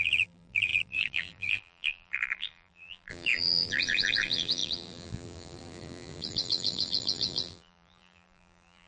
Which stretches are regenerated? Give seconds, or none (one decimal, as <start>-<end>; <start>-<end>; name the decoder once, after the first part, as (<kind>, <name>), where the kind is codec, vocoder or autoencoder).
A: 0.0-8.9 (vocoder, BigVGAN v2)